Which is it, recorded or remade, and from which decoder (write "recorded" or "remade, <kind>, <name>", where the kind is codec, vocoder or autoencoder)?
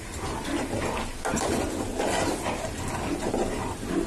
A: recorded